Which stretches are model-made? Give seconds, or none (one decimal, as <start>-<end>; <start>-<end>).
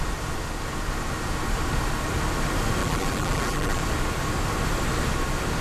2.8-3.8